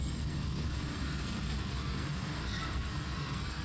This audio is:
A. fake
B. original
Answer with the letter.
A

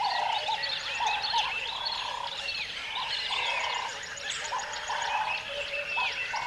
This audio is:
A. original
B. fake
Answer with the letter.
A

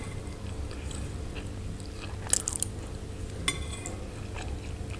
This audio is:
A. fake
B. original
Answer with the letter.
B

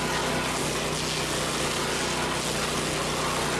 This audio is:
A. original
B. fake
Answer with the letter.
A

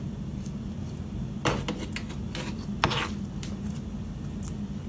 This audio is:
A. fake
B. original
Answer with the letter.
B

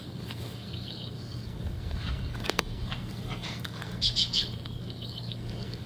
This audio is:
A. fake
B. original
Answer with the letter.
A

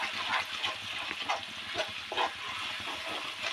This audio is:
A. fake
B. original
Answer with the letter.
B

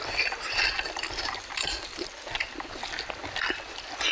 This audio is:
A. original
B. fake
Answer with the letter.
A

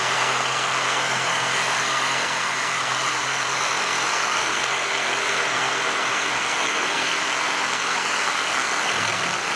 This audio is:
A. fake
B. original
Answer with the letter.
A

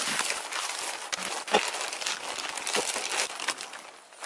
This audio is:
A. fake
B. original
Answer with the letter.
B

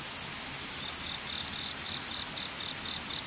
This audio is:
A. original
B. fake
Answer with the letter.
A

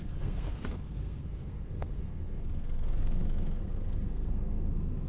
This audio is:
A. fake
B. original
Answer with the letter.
A